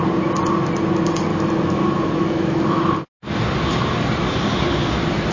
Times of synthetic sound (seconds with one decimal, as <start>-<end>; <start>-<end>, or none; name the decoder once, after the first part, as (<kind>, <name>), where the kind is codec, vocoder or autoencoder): 1.3-2.8 (autoencoder, DAC-VAE)